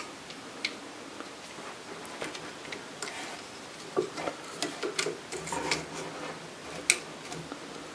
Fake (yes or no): no